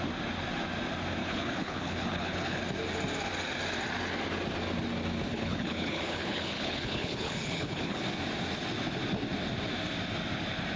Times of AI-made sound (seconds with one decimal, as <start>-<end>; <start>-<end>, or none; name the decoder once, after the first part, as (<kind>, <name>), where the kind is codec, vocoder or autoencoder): 1.2-2.6 (codec, HILCodec); 5.3-8.0